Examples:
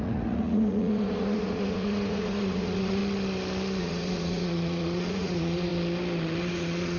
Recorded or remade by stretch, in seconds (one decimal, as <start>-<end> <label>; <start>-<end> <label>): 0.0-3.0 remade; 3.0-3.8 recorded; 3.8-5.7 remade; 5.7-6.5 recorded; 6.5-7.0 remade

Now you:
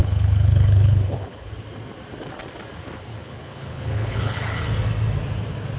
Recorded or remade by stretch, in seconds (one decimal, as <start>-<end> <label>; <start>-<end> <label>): 0.0-1.5 remade; 1.5-3.1 recorded; 3.1-4.6 remade; 4.6-5.8 recorded

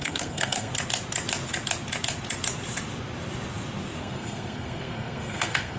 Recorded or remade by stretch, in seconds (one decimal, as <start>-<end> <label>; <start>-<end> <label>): 0.0-0.7 remade; 0.7-4.0 recorded; 4.0-5.8 remade

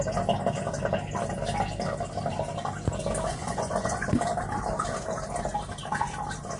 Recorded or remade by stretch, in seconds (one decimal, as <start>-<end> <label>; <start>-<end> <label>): 0.0-3.3 recorded; 3.3-4.1 remade; 4.1-6.6 recorded

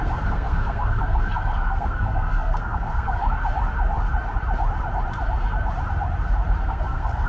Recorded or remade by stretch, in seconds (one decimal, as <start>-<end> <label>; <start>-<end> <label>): 0.0-3.2 remade; 3.2-6.6 recorded; 6.6-7.3 remade